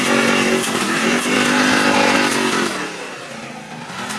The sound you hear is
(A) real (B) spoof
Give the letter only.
A